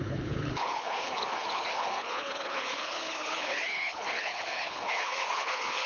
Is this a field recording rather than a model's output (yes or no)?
no